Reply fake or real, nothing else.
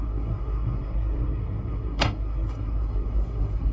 fake